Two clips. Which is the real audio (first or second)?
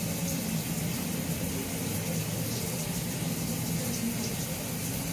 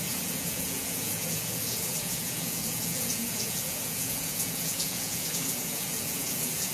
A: first